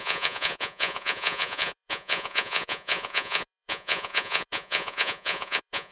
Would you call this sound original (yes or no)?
no